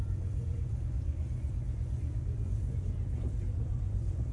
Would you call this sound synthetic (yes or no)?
yes